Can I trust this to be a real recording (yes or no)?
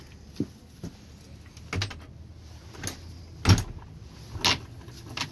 yes